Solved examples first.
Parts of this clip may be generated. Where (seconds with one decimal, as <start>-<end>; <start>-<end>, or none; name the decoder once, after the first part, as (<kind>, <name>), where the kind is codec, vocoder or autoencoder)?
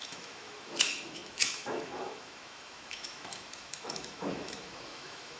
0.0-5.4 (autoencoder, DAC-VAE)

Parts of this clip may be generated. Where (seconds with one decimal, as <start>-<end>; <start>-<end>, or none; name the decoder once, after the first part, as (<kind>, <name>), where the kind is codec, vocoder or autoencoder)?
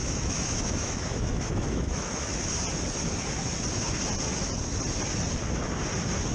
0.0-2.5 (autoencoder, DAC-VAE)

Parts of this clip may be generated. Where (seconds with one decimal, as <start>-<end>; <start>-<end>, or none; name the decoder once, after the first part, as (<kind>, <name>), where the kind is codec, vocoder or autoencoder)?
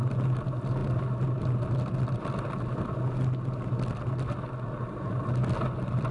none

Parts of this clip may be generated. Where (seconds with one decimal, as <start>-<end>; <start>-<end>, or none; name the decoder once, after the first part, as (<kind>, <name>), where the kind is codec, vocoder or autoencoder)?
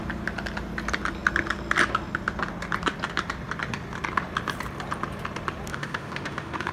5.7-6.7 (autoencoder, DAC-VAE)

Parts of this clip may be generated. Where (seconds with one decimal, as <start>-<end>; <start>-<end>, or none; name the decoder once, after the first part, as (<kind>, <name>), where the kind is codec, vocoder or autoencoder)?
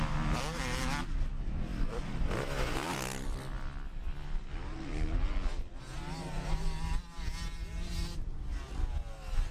none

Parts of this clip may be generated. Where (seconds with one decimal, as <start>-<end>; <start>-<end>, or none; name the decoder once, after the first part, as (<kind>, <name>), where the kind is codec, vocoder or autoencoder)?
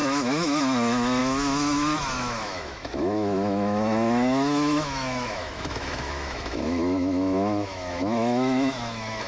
0.0-9.3 (autoencoder, DAC-VAE)